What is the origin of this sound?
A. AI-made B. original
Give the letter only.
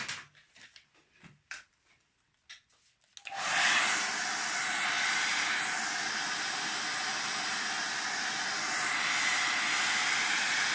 B